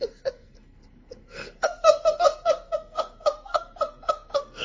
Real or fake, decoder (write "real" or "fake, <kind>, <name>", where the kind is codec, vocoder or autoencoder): fake, codec, SNAC